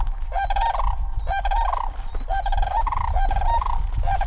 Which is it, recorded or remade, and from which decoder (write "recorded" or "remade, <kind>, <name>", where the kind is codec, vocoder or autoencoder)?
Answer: recorded